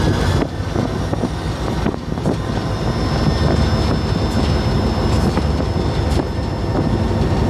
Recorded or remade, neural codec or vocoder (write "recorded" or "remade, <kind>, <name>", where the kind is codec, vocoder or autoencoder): recorded